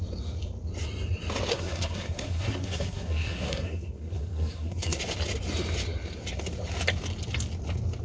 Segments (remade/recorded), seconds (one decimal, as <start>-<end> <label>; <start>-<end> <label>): 0.0-1.5 recorded; 1.5-5.0 remade; 5.0-8.0 recorded